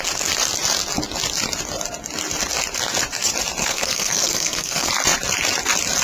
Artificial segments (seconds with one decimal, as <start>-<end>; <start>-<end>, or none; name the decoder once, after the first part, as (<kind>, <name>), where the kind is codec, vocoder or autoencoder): 3.6-4.9 (codec, SNAC)